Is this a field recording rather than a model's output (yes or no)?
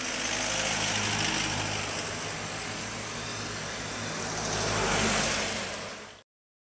yes